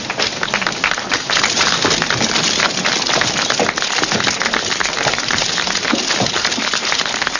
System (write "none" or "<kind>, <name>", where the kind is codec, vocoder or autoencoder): none